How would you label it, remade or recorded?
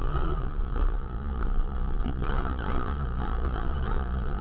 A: remade